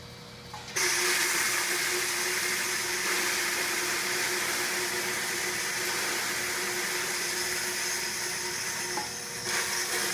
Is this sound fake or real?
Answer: real